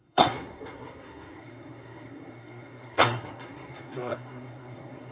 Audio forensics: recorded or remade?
remade